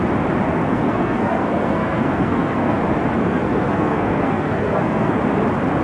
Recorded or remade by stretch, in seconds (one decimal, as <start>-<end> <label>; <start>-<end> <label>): 0.0-0.5 recorded; 0.5-2.8 remade; 2.8-3.2 recorded; 3.2-5.2 remade; 5.2-5.8 recorded

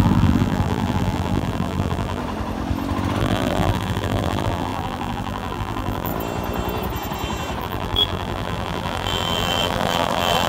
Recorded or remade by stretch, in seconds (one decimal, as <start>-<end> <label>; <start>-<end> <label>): 0.0-2.2 remade; 2.2-3.2 recorded; 3.2-6.1 remade; 6.1-7.6 recorded; 7.6-10.5 remade

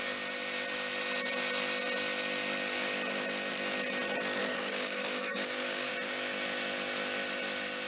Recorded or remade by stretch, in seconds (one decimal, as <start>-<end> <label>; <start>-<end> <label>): 0.0-4.4 recorded; 4.4-5.9 remade; 5.9-7.9 recorded

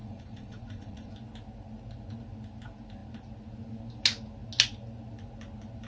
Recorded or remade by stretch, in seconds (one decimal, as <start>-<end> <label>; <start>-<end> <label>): 0.0-1.1 remade; 1.1-5.9 recorded

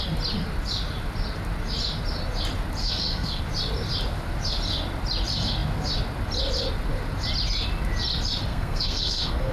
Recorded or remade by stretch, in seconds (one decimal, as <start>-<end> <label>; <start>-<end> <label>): 0.0-2.8 recorded; 2.8-3.4 remade; 3.4-8.5 recorded; 8.5-9.5 remade

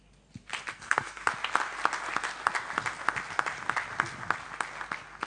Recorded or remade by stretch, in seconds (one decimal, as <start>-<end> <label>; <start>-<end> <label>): 0.0-0.7 recorded; 0.7-1.3 remade; 1.3-5.3 recorded

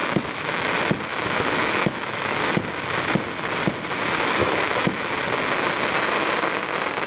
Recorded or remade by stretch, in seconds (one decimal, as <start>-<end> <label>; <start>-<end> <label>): 0.0-0.7 remade; 0.7-1.1 recorded; 1.1-2.4 remade; 2.4-4.4 recorded; 4.4-5.1 remade; 5.1-7.1 recorded